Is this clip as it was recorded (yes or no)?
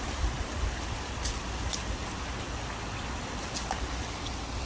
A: yes